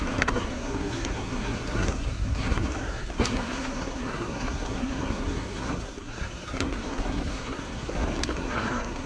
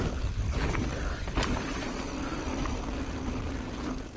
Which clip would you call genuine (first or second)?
second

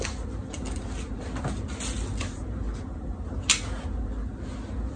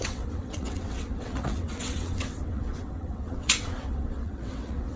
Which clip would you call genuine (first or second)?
first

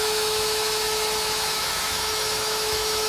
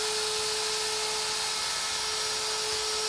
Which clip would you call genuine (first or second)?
second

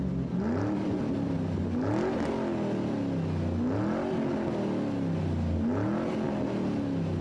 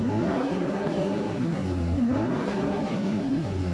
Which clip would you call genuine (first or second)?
first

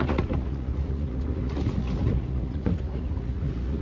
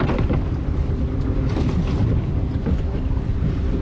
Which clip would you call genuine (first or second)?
second